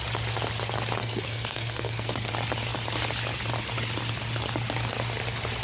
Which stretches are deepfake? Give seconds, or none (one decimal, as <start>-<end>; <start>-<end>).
1.0-2.3